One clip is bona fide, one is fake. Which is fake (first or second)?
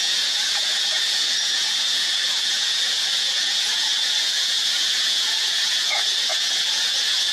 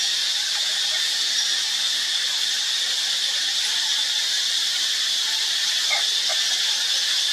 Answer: first